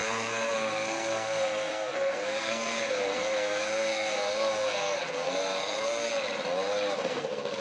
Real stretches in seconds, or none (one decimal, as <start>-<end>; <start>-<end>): 6.1-6.9